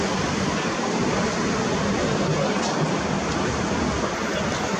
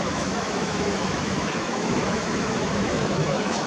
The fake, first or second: second